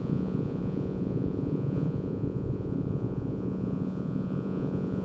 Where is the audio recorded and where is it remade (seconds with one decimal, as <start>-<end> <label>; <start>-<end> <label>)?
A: 0.0-5.0 remade

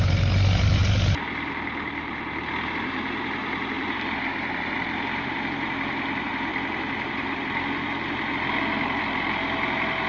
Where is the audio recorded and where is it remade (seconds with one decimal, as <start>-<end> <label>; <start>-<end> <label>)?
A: 0.0-10.1 recorded

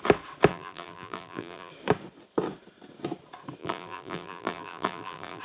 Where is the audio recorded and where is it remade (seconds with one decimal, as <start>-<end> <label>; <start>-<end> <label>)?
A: 0.0-0.5 recorded; 0.5-1.7 remade; 1.7-3.6 recorded; 3.6-5.4 remade

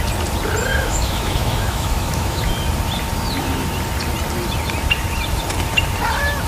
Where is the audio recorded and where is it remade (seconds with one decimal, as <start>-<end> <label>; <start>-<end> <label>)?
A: 0.0-0.7 recorded; 0.7-2.5 remade; 2.5-6.5 recorded